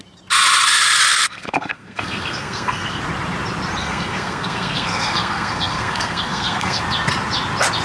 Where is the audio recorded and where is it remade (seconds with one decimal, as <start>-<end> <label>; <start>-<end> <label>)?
0.0-1.1 recorded; 1.1-3.0 remade; 3.0-3.8 recorded; 3.8-6.8 remade; 6.8-7.8 recorded